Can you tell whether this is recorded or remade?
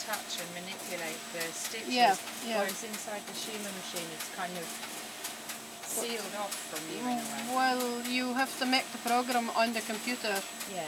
recorded